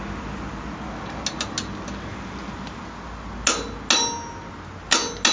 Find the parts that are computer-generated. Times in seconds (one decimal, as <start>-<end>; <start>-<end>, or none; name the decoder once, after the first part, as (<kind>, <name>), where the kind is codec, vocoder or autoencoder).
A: none

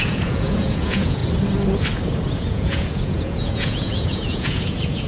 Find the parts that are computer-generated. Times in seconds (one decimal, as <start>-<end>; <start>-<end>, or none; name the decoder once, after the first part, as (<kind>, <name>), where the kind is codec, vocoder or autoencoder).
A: 0.0-1.2 (vocoder, Vocos); 2.3-5.1